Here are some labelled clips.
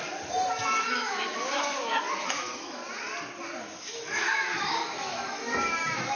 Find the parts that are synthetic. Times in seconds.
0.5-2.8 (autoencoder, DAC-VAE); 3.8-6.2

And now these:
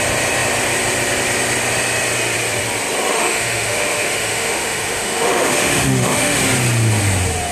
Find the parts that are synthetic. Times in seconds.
3.1-6.4 (autoencoder, DAC-VAE)

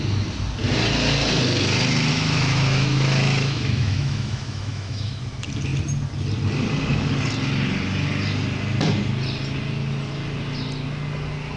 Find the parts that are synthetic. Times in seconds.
2.1-5.2 (autoencoder, DAC-VAE)

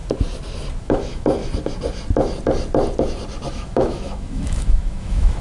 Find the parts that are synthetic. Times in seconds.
0.8-1.4 (autoencoder, DAC-VAE); 3.5-5.4

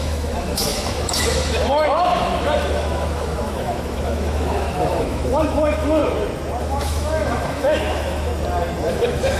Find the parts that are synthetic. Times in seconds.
0.0-6.0 (autoencoder, DAC-VAE); 6.6-8.3; 8.9-9.4

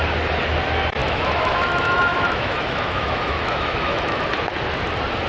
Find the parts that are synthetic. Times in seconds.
1.0-4.2 (autoencoder, DAC-VAE)

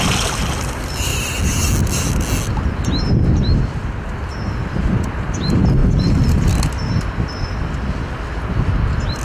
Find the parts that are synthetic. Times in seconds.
none

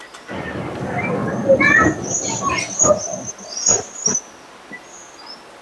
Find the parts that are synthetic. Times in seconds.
none